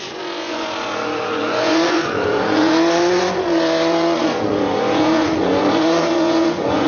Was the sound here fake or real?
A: fake